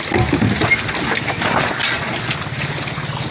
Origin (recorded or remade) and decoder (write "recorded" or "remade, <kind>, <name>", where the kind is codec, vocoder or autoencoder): recorded